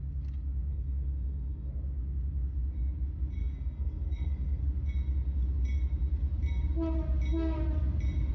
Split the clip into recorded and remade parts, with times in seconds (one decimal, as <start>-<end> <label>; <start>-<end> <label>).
0.0-0.7 recorded; 0.7-1.7 remade; 1.7-3.4 recorded; 3.4-4.6 remade; 4.6-8.3 recorded